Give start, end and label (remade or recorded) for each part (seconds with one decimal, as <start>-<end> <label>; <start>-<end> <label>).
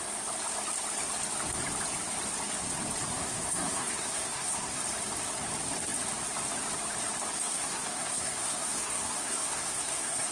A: 0.0-3.1 recorded; 3.1-4.8 remade; 4.8-7.4 recorded; 7.4-10.3 remade